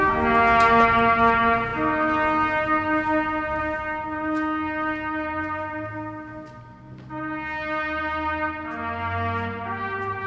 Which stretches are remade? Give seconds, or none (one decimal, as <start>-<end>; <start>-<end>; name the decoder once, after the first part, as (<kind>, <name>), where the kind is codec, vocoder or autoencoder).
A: none